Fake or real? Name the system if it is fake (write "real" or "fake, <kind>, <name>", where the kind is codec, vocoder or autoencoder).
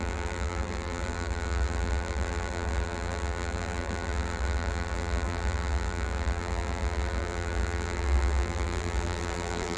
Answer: fake, vocoder, BigVGAN v2